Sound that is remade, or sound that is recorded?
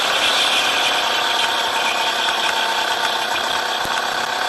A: recorded